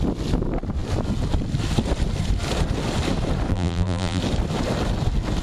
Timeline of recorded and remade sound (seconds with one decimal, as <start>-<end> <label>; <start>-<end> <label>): 0.0-3.5 recorded; 3.5-4.2 remade; 4.2-5.4 recorded